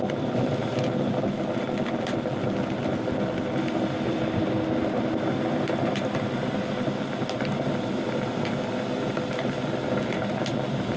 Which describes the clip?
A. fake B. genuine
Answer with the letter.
B